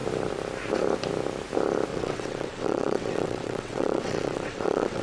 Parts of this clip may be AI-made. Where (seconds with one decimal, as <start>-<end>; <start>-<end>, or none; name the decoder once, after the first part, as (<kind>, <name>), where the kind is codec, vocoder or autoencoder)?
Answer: 1.9-5.0 (vocoder, WaveNeXt)